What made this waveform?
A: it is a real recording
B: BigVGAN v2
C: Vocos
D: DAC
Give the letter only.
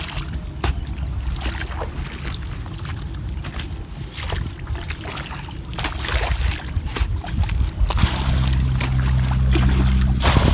A